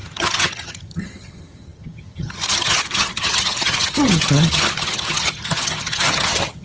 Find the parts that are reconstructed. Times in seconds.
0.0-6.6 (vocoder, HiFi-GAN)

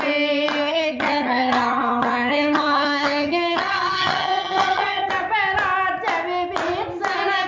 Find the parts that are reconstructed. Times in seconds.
0.6-5.1 (vocoder, HiFi-GAN)

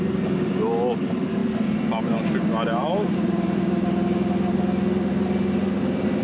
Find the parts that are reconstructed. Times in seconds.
none

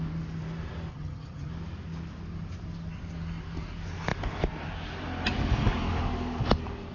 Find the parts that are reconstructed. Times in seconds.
0.9-1.5 (vocoder, HiFi-GAN)

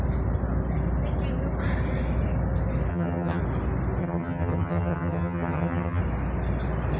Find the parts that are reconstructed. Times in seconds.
2.9-3.4 (vocoder, HiFi-GAN); 4.0-6.0

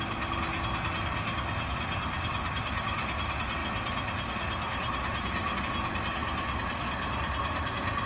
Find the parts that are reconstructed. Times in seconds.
none